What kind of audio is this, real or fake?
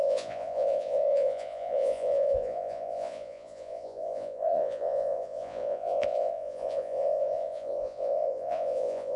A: fake